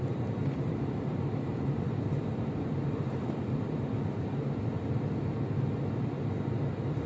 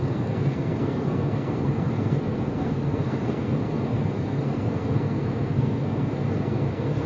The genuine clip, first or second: first